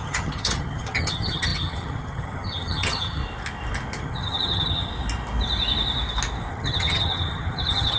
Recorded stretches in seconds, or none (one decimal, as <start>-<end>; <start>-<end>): 3.2-4.0; 4.9-6.5